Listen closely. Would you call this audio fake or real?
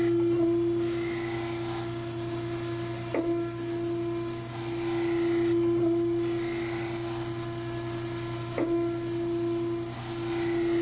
real